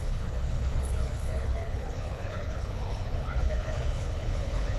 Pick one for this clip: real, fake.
fake